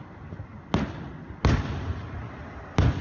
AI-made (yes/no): no